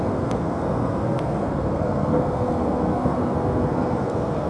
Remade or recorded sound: remade